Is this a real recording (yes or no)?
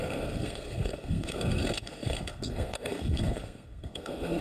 no